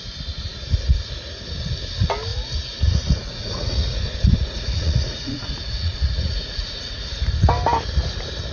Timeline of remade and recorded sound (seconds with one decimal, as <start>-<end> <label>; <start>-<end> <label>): 0.0-2.3 recorded; 2.3-7.2 remade; 7.2-8.5 recorded